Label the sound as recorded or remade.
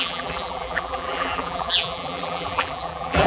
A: remade